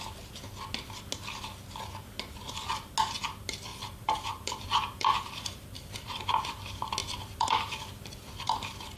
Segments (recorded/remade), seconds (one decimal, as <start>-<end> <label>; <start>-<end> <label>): 0.0-3.7 recorded; 3.7-6.2 remade; 6.2-7.0 recorded; 7.0-7.8 remade; 7.8-9.0 recorded